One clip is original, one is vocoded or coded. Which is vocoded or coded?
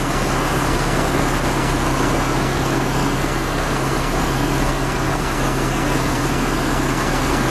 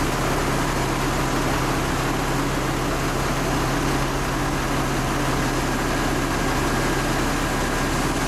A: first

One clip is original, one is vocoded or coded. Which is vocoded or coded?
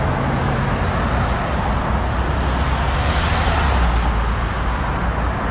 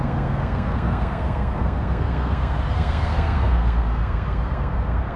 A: second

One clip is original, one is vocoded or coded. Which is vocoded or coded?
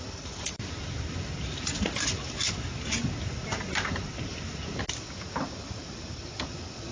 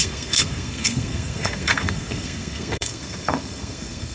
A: second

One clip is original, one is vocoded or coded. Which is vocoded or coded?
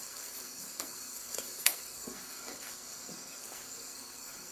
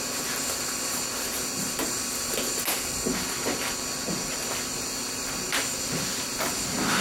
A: first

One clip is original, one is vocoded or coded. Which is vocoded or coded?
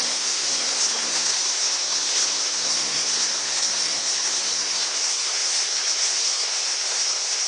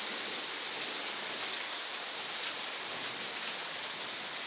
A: first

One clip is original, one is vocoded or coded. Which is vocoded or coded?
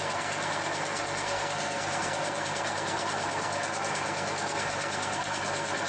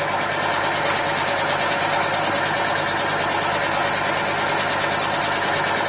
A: first